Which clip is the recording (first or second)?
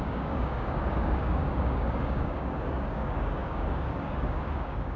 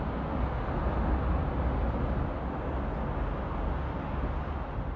second